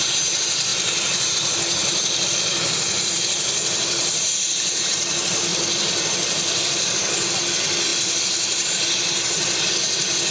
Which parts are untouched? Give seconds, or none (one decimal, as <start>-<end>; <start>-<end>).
0.0-1.8; 3.3-5.5; 7.0-7.9; 8.7-10.3